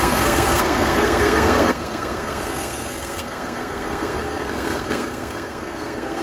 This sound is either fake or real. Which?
fake